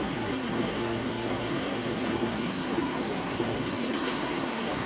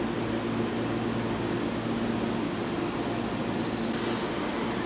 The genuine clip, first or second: second